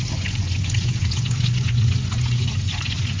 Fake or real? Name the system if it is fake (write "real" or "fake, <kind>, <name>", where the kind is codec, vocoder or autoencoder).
fake, vocoder, Vocos